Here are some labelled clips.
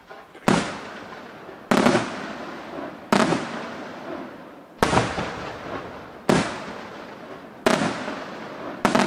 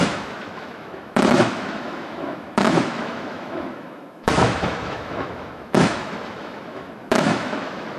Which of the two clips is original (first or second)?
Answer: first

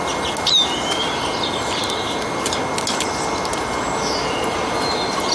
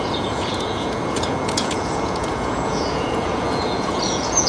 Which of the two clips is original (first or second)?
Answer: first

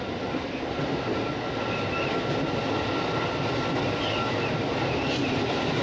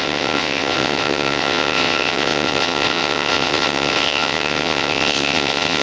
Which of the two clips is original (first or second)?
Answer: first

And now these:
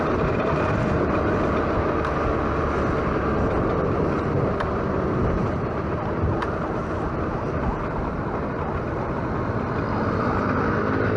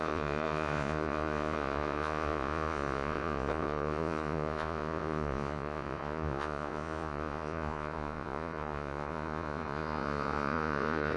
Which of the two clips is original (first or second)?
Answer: first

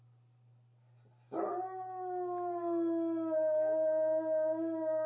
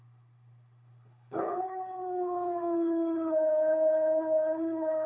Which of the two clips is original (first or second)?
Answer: first